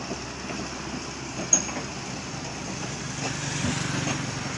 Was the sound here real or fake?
real